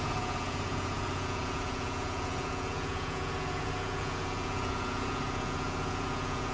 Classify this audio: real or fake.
fake